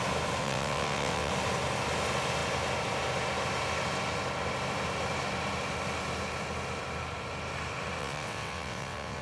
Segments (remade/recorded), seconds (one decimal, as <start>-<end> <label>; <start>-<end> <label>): 0.0-0.4 recorded; 0.4-1.3 remade; 1.3-8.0 recorded; 8.0-9.2 remade